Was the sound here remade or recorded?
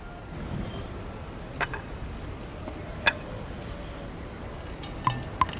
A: recorded